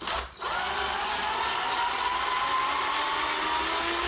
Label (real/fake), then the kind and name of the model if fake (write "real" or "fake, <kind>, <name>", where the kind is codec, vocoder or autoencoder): real